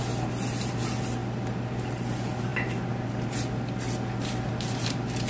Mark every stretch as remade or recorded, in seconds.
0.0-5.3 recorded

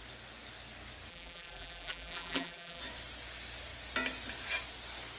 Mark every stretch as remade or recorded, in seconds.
0.0-1.1 recorded; 1.1-2.8 remade; 2.8-5.2 recorded

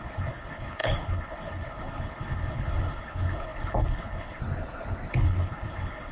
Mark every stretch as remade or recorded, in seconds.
0.0-4.4 remade; 4.4-5.1 recorded; 5.1-6.1 remade

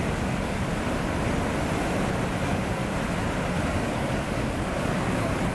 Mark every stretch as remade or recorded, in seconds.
0.0-0.7 remade; 0.7-2.4 recorded; 2.4-2.8 remade; 2.8-3.7 recorded; 3.7-5.5 remade

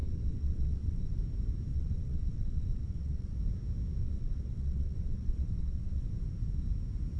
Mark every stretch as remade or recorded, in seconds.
0.0-1.2 remade; 1.2-1.7 recorded; 1.7-3.4 remade; 3.4-4.0 recorded; 4.0-6.1 remade; 6.1-7.2 recorded

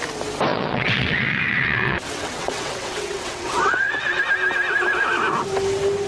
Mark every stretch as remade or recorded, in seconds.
0.0-0.5 recorded; 0.5-4.2 remade; 4.2-6.1 recorded

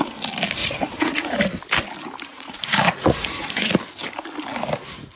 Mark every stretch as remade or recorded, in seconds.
0.0-0.6 recorded; 0.6-1.4 remade; 1.4-2.3 recorded; 2.3-3.7 remade; 3.7-5.2 recorded

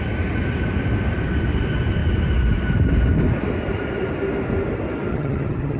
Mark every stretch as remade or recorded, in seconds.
0.0-5.1 recorded; 5.1-5.8 remade